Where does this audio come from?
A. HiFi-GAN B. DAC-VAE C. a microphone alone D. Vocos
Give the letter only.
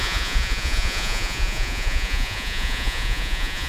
D